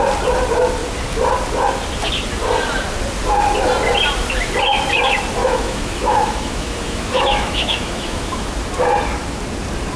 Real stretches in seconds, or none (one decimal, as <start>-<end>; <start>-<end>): 0.0-5.4; 8.5-10.0